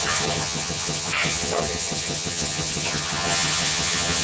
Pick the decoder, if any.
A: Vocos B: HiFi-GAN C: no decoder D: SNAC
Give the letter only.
B